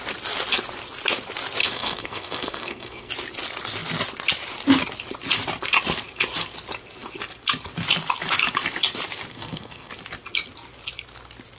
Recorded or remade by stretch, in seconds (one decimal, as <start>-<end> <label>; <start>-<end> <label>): 0.0-1.6 recorded; 1.6-3.1 remade; 3.1-9.3 recorded; 9.3-9.9 remade; 9.9-11.6 recorded